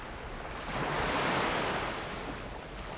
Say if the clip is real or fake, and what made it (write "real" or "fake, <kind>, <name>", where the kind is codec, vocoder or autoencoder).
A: real